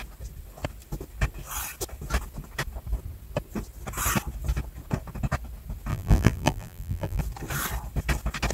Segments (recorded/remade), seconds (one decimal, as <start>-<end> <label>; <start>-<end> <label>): 0.0-5.9 recorded; 5.9-7.2 remade; 7.2-8.5 recorded